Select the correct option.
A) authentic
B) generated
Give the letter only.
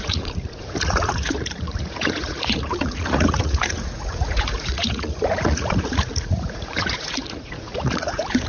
B